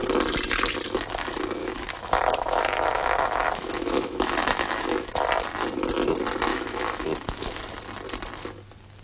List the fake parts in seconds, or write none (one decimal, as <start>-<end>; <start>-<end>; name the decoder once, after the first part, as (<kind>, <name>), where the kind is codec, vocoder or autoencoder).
1.6-5.1 (autoencoder, DAC-VAE); 6.5-7.6